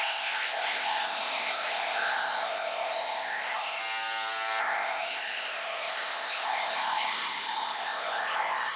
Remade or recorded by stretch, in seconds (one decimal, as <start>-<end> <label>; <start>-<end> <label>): 0.0-3.8 remade; 3.8-4.6 recorded; 4.6-8.8 remade